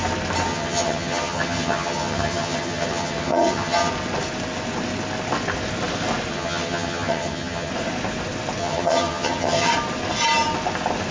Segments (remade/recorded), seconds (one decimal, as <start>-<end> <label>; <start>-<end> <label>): 0.0-0.5 recorded; 0.5-3.9 remade; 3.9-6.3 recorded; 6.3-7.7 remade; 7.7-8.6 recorded; 8.6-9.7 remade; 9.7-11.1 recorded